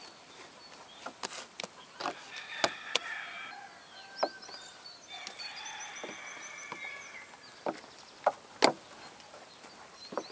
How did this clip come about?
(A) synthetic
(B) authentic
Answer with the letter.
B